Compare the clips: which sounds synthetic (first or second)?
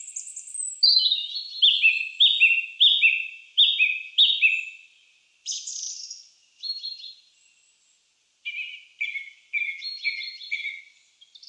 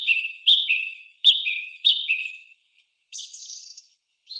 second